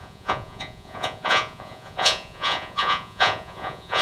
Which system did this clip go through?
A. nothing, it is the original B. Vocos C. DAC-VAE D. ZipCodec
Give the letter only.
B